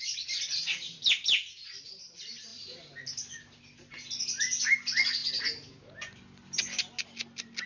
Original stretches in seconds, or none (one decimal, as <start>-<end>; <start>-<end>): 0.0-7.7